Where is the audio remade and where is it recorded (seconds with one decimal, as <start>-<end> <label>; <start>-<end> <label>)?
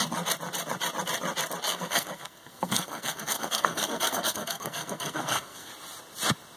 0.0-1.7 recorded; 1.7-5.7 remade; 5.7-6.6 recorded